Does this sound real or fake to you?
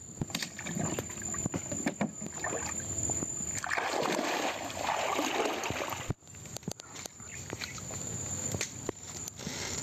real